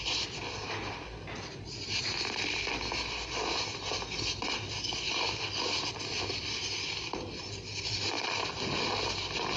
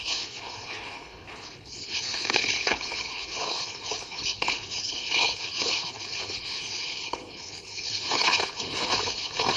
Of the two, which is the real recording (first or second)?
first